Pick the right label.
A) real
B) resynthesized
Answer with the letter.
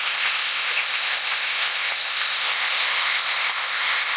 B